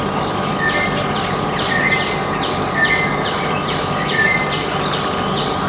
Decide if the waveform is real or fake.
real